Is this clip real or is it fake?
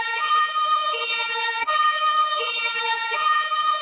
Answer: fake